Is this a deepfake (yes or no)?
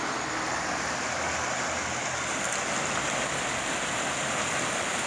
no